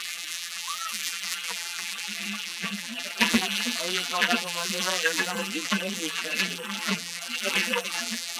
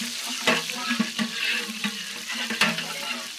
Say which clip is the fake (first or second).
first